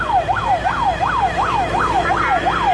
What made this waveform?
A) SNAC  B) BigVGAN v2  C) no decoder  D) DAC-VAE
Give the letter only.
C